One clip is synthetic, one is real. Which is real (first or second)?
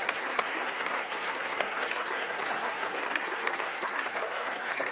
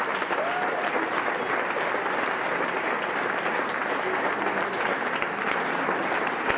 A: second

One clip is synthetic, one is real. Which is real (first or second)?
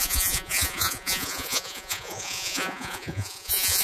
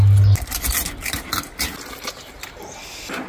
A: second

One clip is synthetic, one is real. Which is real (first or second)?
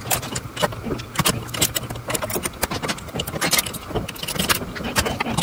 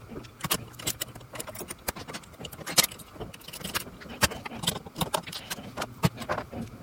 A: first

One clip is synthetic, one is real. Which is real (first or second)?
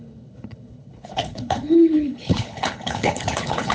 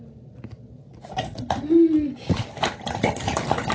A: second